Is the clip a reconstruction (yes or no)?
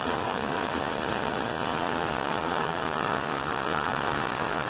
yes